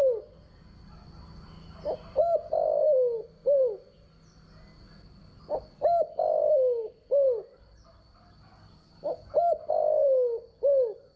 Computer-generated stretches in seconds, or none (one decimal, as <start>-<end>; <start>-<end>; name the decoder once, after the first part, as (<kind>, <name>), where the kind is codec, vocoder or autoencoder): none